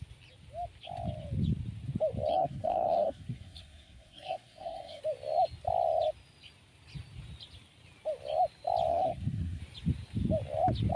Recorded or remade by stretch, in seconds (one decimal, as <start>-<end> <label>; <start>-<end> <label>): 0.0-2.3 recorded; 2.3-5.0 remade; 5.0-8.9 recorded; 8.9-9.6 remade; 9.6-11.0 recorded